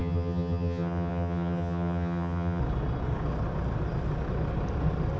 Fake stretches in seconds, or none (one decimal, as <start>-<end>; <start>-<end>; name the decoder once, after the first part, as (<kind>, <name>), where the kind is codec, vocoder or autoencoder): 0.0-2.6 (vocoder, HiFi-GAN)

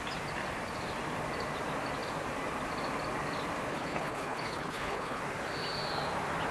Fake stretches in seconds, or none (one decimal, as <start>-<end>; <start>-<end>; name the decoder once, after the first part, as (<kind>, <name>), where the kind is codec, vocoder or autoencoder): 3.7-5.2 (codec, HILCodec)

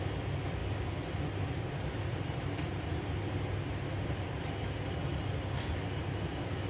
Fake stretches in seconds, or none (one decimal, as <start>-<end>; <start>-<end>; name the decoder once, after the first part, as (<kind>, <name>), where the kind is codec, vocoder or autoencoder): 0.6-4.5 (vocoder, BigVGAN v2)

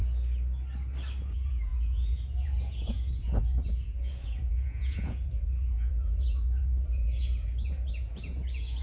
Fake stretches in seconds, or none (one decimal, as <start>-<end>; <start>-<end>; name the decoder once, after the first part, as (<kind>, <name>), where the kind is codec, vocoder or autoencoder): 1.2-8.8 (vocoder, Vocos)

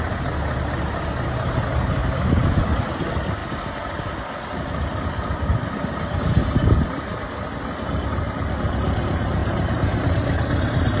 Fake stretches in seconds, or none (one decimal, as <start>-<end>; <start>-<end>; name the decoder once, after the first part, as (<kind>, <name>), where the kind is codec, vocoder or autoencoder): 2.0-2.6 (vocoder, BigVGAN v2); 9.4-11.0

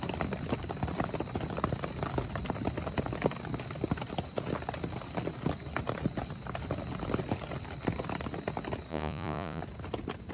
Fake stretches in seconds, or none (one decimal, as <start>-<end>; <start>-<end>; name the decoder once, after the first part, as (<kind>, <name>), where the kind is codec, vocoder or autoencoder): 8.9-9.6 (vocoder, Vocos)

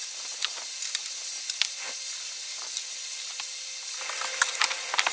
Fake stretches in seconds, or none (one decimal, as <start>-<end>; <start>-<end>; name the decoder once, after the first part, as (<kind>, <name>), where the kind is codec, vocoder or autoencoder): none

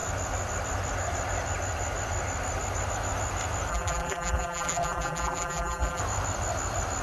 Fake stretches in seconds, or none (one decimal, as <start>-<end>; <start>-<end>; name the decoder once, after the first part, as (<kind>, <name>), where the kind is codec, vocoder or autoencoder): 3.7-6.0 (vocoder, BigVGAN v2)